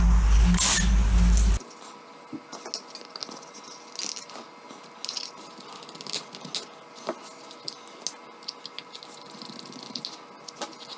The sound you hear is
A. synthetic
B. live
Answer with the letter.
B